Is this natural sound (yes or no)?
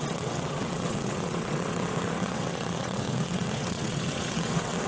no